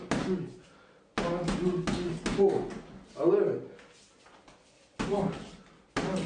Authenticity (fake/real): real